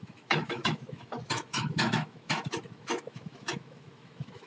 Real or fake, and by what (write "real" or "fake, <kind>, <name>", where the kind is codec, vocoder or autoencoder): fake, autoencoder, DAC-VAE